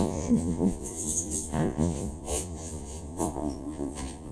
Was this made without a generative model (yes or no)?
no